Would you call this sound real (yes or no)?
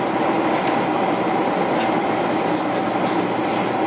yes